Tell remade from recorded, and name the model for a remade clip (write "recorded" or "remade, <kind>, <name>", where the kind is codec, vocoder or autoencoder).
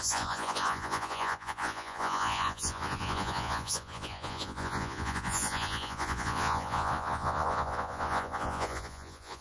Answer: remade, vocoder, Vocos